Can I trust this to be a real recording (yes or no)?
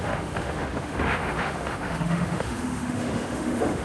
no